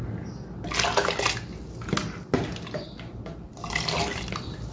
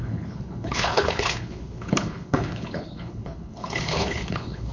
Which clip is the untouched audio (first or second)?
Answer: first